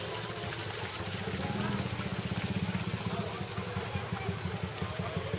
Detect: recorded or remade recorded